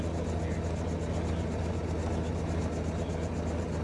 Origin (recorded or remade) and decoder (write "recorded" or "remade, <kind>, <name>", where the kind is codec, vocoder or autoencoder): recorded